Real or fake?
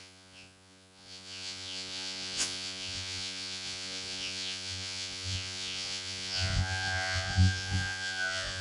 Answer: fake